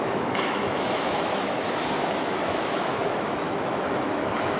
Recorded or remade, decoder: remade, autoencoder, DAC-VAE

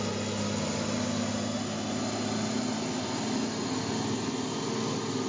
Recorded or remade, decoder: recorded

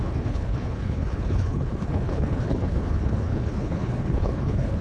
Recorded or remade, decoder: remade, codec, HILCodec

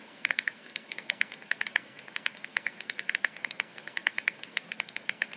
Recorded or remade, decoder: remade, codec, SNAC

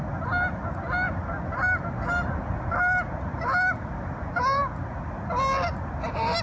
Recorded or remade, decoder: recorded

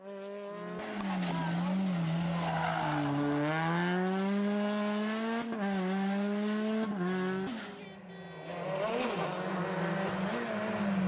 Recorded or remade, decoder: recorded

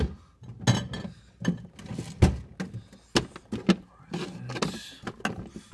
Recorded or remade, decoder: recorded